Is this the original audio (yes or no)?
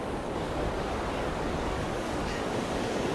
no